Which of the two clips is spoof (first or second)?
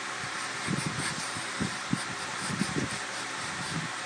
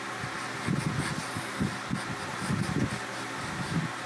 first